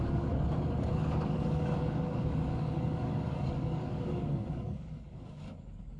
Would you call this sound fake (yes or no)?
yes